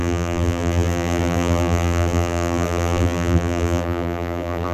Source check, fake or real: fake